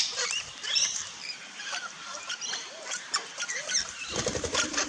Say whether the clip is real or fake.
fake